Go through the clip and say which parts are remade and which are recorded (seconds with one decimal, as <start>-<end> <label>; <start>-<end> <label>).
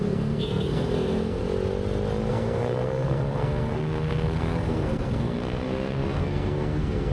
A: 0.0-1.4 remade; 1.4-2.3 recorded; 2.3-7.1 remade